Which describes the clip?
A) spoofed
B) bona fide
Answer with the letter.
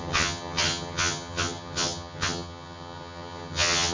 A